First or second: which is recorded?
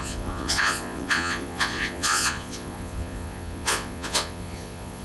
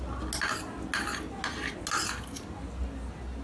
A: second